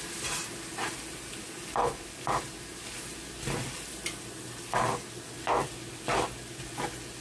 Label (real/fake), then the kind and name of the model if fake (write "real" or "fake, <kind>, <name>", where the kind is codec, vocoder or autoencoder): real